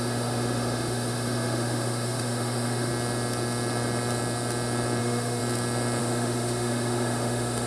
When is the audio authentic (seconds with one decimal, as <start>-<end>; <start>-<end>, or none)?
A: 2.9-5.0; 5.4-6.0